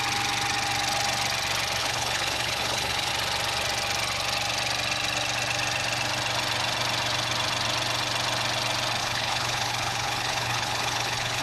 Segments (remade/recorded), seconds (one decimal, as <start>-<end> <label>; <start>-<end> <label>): 0.0-1.8 recorded; 1.8-3.1 remade; 3.1-9.0 recorded; 9.0-11.4 remade

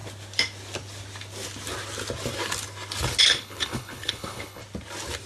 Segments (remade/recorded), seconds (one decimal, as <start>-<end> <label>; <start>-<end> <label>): 0.0-3.2 recorded; 3.2-4.6 remade; 4.6-5.3 recorded